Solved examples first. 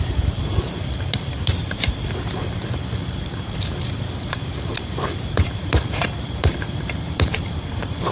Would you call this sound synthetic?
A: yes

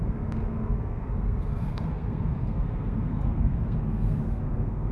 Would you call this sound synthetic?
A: yes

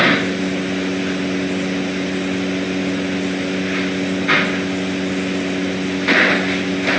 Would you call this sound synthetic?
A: no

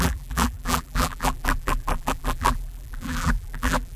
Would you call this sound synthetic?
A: yes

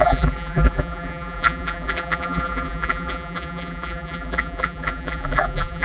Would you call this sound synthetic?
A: yes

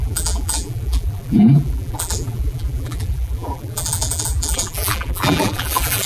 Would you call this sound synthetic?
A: yes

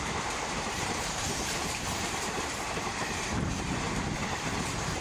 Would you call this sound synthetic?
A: yes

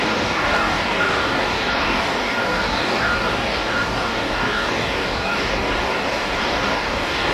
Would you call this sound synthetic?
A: yes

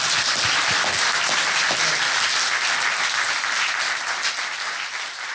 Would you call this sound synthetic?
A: no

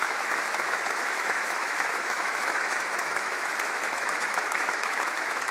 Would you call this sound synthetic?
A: yes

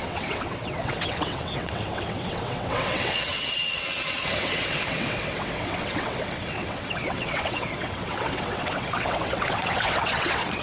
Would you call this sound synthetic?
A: yes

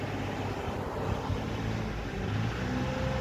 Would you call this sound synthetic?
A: no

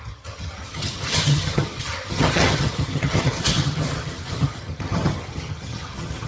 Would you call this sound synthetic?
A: yes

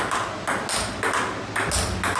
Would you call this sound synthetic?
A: no